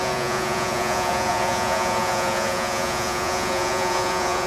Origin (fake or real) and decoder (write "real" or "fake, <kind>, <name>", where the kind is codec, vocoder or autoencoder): fake, vocoder, Vocos